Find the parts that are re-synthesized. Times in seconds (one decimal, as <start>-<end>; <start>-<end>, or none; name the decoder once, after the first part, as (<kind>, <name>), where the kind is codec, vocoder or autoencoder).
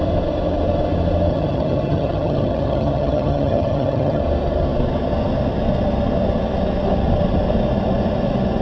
1.3-4.2 (vocoder, HiFi-GAN)